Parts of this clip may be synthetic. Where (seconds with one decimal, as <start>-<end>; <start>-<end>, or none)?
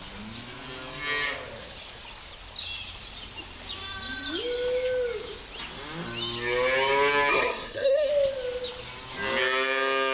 7.3-8.1